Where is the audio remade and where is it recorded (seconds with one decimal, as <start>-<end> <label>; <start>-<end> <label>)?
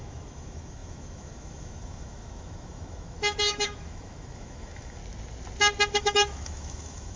0.0-5.0 remade; 5.0-6.0 recorded; 6.0-7.2 remade